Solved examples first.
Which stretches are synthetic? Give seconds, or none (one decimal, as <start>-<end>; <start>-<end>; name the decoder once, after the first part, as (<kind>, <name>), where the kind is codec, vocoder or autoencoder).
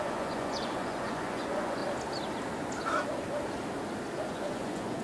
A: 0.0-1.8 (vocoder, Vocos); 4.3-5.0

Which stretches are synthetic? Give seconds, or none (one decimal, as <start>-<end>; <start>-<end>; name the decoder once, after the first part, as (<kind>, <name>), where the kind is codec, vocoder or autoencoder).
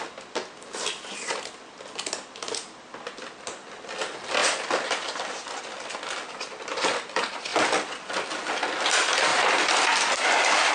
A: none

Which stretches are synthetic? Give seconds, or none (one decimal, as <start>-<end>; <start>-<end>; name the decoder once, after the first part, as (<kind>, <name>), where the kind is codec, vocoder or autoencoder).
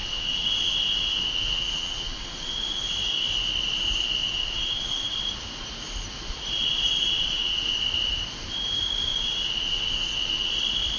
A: 0.0-2.9 (vocoder, Vocos); 4.2-5.2; 6.6-7.8; 9.1-10.5